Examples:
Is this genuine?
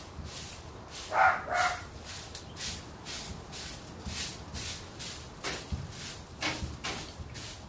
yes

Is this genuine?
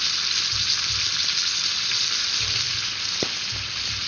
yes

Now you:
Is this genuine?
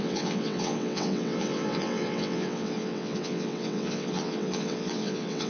no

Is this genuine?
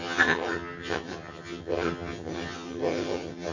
no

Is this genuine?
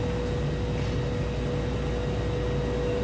yes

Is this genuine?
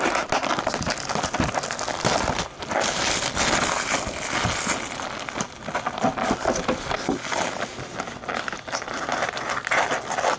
yes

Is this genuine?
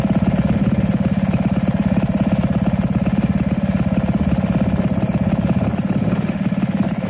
yes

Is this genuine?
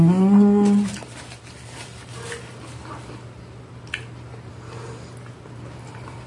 yes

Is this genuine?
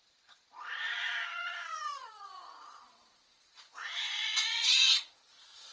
no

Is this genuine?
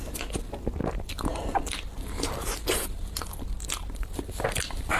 yes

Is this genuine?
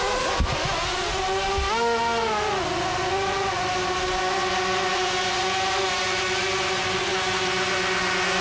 yes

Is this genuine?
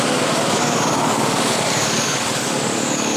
no